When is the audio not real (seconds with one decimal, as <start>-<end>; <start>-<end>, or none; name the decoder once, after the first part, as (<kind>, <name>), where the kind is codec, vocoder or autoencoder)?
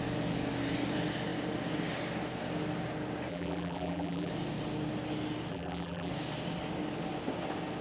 3.3-4.3 (vocoder, BigVGAN v2); 5.5-6.1